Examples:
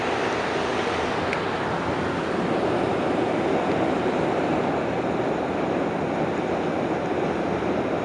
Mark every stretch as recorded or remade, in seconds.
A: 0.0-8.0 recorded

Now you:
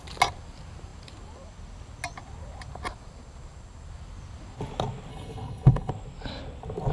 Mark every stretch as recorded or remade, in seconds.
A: 0.0-5.1 recorded; 5.1-5.9 remade; 5.9-6.9 recorded

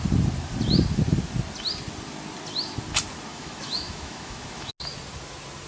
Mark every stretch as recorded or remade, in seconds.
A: 0.0-3.3 recorded; 3.3-4.7 remade; 4.7-5.7 recorded

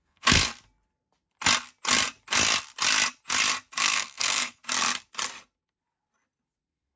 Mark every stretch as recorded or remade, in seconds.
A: 0.0-0.4 remade; 0.4-3.8 recorded; 3.8-4.6 remade; 4.6-6.6 recorded; 6.6-7.0 remade

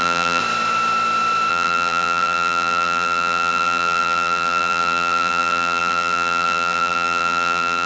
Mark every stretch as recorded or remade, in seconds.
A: 0.0-0.4 remade; 0.4-1.5 recorded; 1.5-7.9 remade

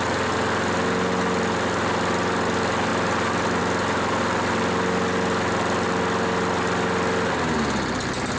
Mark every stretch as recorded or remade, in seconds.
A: 0.0-8.4 recorded